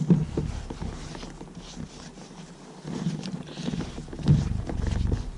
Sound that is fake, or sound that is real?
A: real